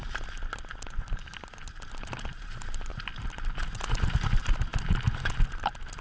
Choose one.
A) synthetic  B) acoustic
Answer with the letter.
B